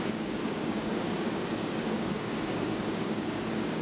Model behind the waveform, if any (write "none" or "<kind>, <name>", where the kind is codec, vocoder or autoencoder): codec, DAC